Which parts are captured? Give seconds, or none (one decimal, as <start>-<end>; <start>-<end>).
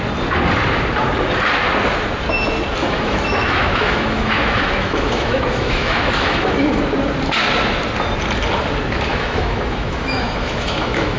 0.0-2.8; 6.8-9.1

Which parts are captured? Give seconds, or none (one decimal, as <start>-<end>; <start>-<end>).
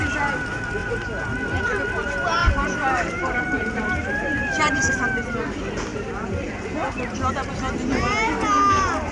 0.0-2.4; 4.9-9.1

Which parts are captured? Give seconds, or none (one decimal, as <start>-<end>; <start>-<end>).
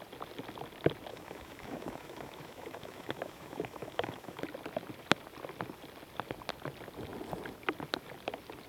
0.0-1.1; 4.4-8.7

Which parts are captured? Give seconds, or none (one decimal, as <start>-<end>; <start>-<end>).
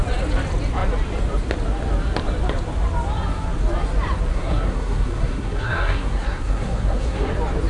0.0-4.3; 7.3-7.7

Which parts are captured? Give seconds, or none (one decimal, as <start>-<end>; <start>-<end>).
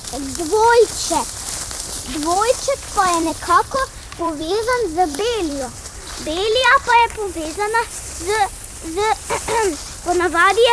0.0-2.9; 7.3-10.7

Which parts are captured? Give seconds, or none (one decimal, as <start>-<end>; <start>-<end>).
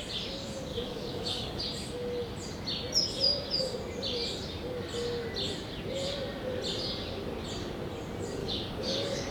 0.0-0.7; 1.6-8.4